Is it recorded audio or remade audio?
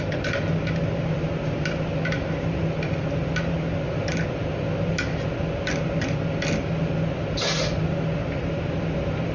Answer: recorded